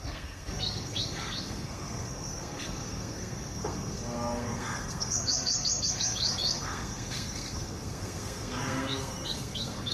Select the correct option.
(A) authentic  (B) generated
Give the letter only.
B